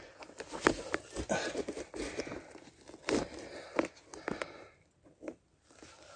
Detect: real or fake real